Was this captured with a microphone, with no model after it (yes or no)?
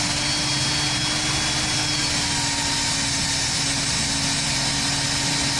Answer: yes